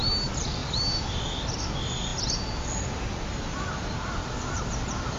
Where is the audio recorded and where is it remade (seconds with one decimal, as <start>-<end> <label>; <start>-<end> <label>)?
0.0-5.2 recorded